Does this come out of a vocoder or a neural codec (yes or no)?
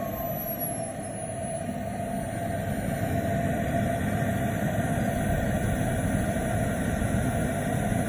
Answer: no